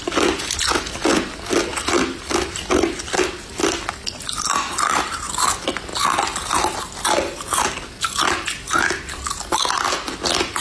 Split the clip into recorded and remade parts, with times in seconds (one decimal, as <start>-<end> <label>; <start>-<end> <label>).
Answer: 0.0-10.6 recorded